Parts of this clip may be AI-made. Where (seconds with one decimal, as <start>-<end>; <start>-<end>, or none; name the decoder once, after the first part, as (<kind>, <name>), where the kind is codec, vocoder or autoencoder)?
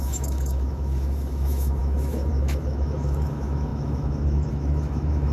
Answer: 0.0-5.3 (autoencoder, DAC-VAE)